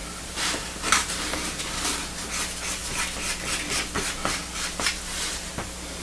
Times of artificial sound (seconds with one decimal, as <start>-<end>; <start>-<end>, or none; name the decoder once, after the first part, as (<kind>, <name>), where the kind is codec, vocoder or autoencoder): 0.0-1.6 (vocoder, BigVGAN v2); 4.4-5.5